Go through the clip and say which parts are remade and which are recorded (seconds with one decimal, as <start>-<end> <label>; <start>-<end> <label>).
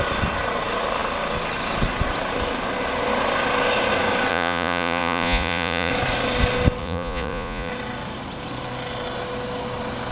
0.0-4.3 recorded; 4.3-5.9 remade; 5.9-6.8 recorded; 6.8-7.7 remade; 7.7-10.1 recorded